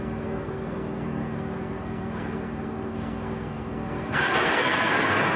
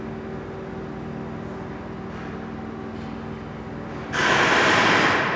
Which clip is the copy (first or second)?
first